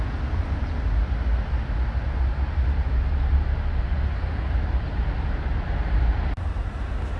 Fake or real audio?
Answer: real